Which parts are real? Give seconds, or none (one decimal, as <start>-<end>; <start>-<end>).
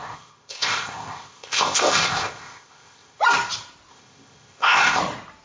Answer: 3.2-3.9; 5.0-5.4